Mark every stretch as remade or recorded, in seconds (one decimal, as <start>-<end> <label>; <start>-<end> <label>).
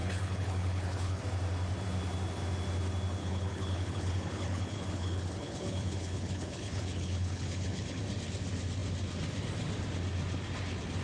0.0-1.2 remade; 1.2-3.2 recorded; 3.2-8.0 remade; 8.0-11.0 recorded